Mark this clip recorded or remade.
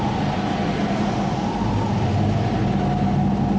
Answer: recorded